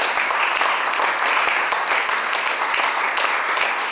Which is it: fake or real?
real